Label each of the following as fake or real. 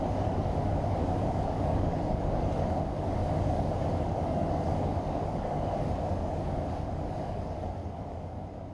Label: fake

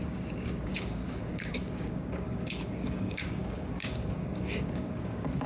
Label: fake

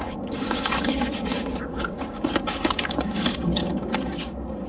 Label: fake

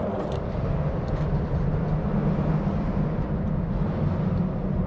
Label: real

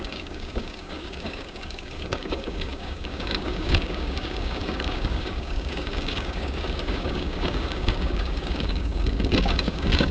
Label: fake